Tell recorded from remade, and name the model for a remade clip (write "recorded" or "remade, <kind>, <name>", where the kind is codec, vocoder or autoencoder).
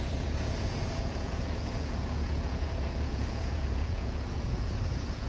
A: remade, vocoder, Vocos